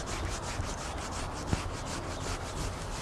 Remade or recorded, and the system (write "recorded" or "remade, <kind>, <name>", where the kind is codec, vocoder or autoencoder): recorded